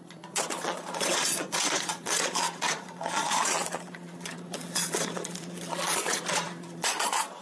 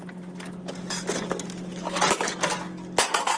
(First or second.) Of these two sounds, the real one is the second